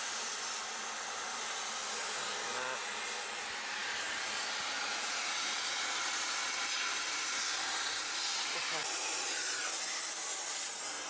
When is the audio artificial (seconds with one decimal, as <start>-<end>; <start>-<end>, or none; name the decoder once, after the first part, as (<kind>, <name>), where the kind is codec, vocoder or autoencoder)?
none